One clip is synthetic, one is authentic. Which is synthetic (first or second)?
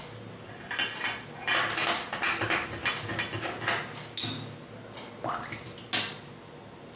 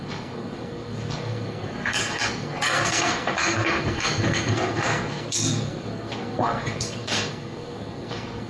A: second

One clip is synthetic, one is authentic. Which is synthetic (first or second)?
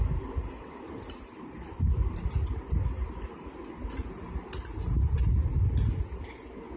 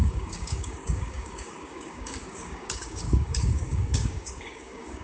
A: second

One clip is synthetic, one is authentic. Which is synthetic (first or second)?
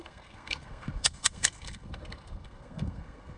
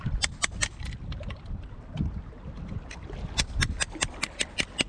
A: first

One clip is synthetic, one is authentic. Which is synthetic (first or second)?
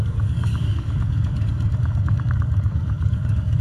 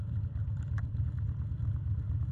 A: first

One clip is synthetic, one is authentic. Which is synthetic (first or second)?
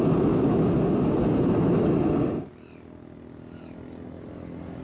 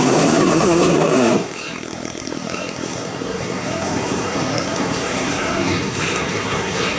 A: second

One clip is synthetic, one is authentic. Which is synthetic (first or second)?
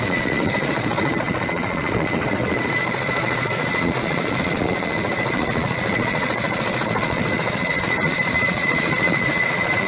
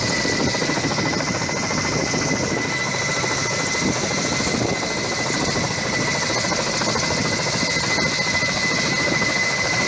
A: first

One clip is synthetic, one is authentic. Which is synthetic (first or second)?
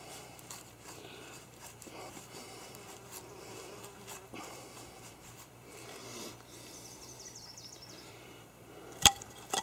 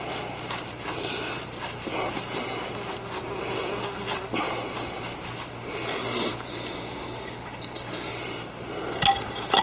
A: first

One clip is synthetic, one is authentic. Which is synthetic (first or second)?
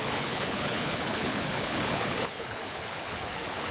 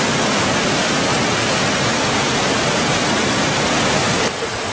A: first